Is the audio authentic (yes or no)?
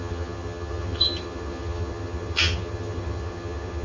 no